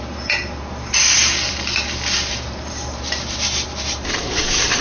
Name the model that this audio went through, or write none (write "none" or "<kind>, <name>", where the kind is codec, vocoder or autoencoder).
vocoder, BigVGAN v2